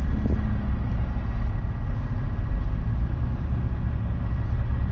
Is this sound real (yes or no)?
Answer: yes